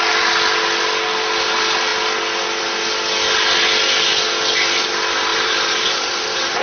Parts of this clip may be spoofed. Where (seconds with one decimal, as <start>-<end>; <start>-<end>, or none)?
5.3-6.6